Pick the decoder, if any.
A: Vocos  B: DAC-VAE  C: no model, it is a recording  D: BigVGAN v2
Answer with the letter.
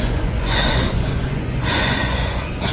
A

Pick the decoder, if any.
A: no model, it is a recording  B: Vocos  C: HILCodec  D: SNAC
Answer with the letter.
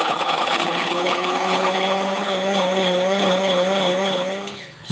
C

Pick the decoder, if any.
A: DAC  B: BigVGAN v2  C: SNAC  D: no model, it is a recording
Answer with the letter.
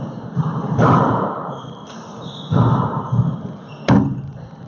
B